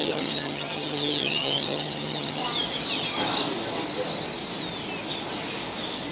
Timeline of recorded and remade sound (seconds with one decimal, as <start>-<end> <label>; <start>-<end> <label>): 0.0-2.4 remade; 2.4-6.1 recorded